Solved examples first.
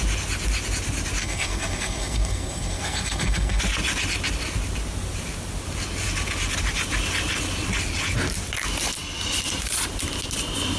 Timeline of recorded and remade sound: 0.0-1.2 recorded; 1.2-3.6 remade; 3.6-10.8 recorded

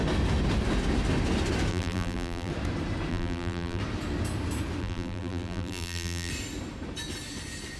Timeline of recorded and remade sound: 0.0-1.7 recorded; 1.7-2.5 remade; 2.5-3.1 recorded; 3.1-3.8 remade; 3.8-4.8 recorded; 4.8-6.3 remade; 6.3-7.8 recorded

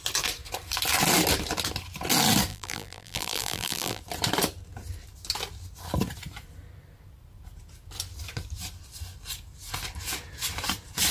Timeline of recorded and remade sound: 0.0-2.5 recorded; 2.5-4.0 remade; 4.0-11.1 recorded

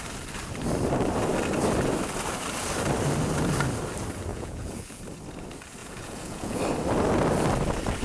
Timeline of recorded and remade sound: 0.0-4.3 recorded; 4.3-5.0 remade; 5.0-5.8 recorded; 5.8-6.6 remade; 6.6-8.0 recorded

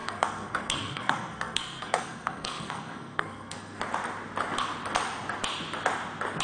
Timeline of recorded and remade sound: 0.0-3.8 remade; 3.8-6.4 recorded

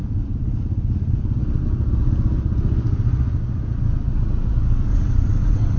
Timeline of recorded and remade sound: 0.0-4.9 recorded; 4.9-5.8 remade